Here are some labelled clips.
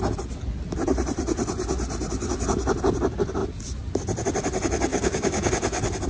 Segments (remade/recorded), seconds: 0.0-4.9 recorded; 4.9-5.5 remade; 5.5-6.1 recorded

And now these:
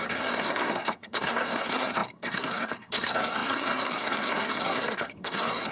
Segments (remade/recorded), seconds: 0.0-5.7 remade